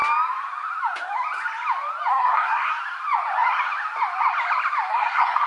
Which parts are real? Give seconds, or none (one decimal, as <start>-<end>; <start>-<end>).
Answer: 0.0-2.1; 2.7-4.9